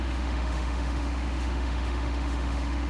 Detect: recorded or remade remade